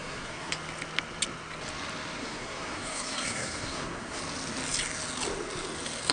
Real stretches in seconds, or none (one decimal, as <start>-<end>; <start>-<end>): 0.5-2.2; 4.2-6.1